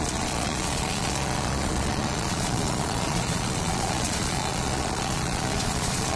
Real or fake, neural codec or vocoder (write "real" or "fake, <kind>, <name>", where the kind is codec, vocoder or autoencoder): fake, vocoder, Vocos